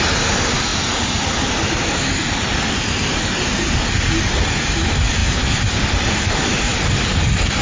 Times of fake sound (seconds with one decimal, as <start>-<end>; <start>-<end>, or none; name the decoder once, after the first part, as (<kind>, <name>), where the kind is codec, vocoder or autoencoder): none